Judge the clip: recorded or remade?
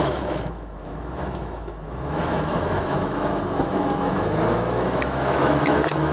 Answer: remade